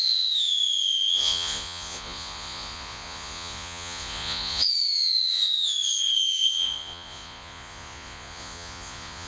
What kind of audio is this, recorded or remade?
remade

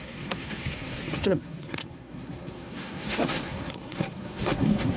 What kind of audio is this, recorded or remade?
remade